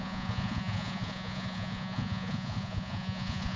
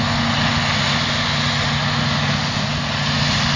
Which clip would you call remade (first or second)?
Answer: first